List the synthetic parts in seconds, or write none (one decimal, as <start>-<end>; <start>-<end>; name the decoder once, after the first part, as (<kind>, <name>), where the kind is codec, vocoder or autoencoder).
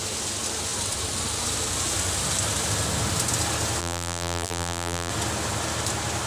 3.8-5.1 (vocoder, BigVGAN v2)